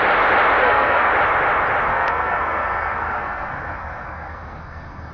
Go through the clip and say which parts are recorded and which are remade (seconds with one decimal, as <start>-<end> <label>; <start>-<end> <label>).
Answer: 0.0-0.6 recorded; 0.6-1.1 remade; 1.1-1.9 recorded; 1.9-5.1 remade